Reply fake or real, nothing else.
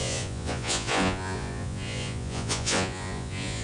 fake